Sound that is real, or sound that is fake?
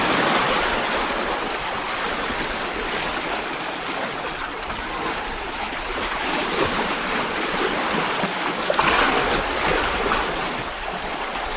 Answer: real